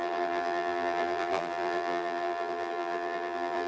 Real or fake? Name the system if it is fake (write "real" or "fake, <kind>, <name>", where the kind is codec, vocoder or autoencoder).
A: fake, vocoder, BigVGAN v2